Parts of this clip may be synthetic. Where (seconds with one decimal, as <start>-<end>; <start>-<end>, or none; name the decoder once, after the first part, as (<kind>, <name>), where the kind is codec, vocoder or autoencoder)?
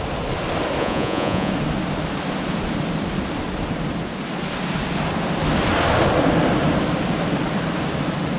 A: 0.8-1.5 (vocoder, Vocos)